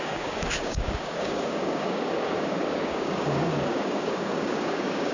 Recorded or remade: remade